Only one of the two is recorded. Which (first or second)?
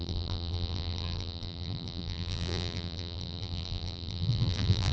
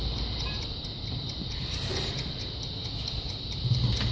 second